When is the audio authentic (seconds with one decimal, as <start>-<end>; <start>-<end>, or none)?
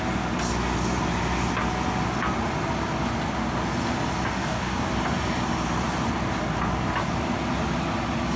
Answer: 0.0-4.4; 5.0-8.4